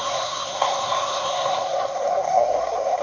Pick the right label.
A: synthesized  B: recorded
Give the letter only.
A